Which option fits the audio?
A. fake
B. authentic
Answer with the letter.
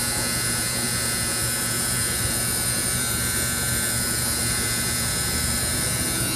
A